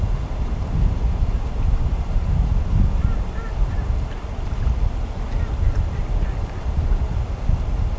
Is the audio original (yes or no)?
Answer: yes